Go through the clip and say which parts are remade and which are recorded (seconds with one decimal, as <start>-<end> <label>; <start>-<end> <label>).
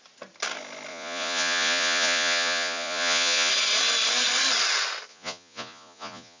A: 0.0-0.9 recorded; 0.9-3.5 remade; 3.5-5.1 recorded; 5.1-6.4 remade